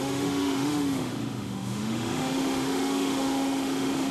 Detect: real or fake fake